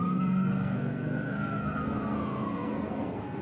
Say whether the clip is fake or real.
fake